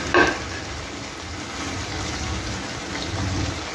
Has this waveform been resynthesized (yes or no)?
no